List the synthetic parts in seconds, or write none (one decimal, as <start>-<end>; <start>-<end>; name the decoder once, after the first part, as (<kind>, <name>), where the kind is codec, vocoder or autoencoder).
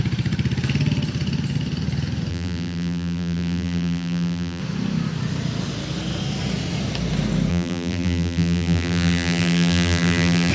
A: 2.3-4.6 (vocoder, BigVGAN v2); 7.5-10.5